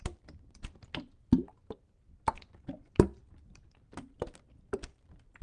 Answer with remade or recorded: recorded